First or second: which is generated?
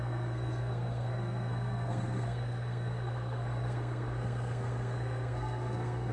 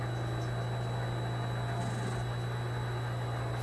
first